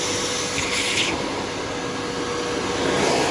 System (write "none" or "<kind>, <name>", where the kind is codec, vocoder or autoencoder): none